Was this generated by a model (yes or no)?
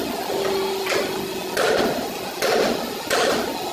no